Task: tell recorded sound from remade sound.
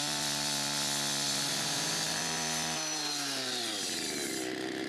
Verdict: remade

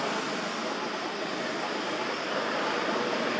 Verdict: recorded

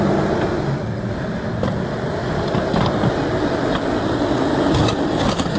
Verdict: recorded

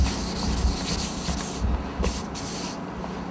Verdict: recorded